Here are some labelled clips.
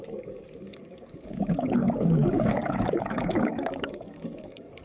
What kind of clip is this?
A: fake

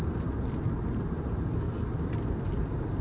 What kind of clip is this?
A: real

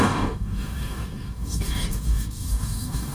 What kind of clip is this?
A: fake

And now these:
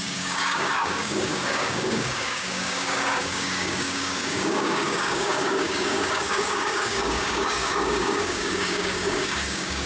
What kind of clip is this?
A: fake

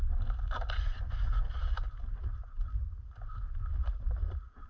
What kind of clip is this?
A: real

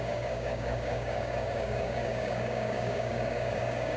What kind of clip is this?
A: fake